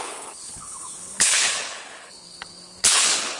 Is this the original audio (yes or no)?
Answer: no